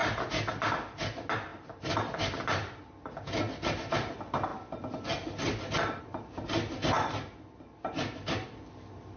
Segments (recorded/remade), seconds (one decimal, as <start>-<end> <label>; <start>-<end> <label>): 0.0-9.2 recorded